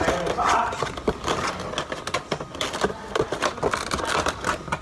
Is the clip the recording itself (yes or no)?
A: yes